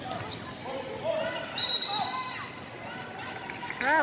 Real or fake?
real